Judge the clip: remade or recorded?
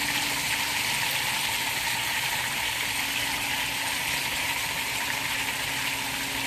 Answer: recorded